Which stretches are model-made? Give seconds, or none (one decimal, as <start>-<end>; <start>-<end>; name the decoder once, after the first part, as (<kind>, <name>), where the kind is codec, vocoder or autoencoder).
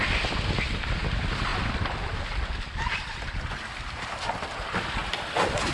none